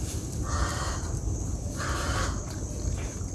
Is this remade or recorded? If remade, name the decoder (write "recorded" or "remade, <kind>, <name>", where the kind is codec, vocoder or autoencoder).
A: recorded